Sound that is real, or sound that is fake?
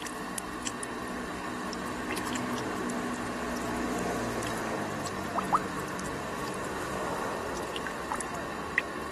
real